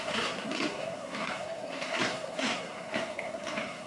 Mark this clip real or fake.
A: fake